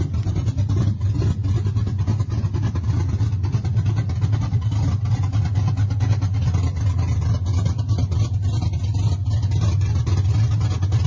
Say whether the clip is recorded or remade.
recorded